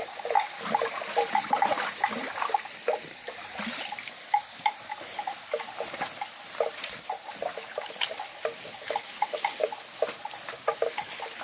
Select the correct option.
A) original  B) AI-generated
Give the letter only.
B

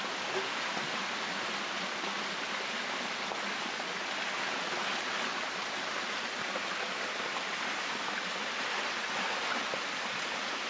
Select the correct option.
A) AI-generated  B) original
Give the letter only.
B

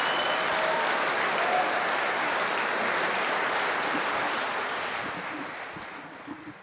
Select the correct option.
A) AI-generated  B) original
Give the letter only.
B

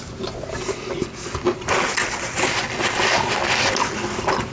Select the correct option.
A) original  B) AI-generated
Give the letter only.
A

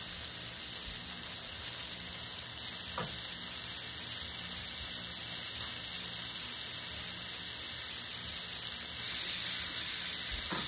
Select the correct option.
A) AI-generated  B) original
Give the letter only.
B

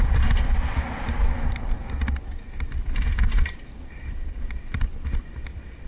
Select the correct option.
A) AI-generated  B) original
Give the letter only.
B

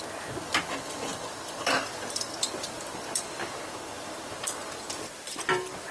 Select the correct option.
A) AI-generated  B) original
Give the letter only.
A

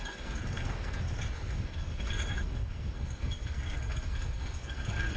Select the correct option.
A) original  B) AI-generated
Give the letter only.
B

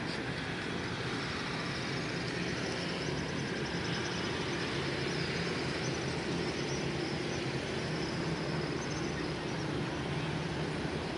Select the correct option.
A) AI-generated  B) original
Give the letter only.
B